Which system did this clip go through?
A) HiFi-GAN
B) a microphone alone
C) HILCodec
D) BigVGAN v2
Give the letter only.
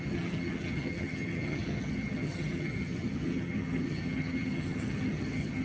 A